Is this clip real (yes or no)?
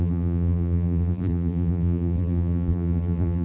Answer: no